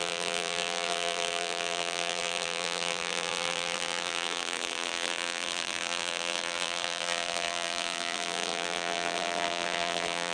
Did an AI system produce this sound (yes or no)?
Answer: yes